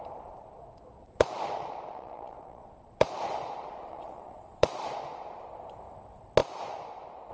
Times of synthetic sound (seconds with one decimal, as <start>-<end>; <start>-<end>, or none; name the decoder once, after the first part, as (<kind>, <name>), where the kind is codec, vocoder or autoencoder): 1.0-5.4 (vocoder, Vocos)